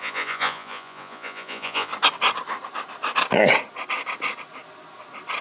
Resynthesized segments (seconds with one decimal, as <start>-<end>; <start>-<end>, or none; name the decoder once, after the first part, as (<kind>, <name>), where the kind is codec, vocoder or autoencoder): 0.0-1.9 (vocoder, Vocos)